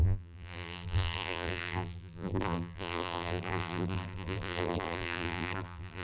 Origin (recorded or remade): remade